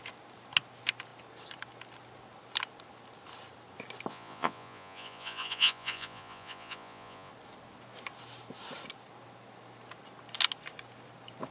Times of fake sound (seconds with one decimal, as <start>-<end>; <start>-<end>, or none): 4.1-7.3